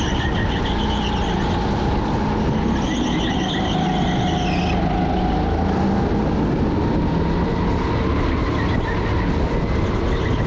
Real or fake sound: real